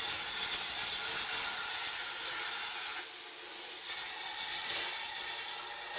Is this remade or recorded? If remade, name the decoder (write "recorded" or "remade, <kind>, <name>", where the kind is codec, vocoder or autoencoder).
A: recorded